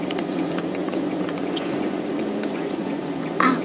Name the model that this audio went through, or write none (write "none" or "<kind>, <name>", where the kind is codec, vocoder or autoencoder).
vocoder, Vocos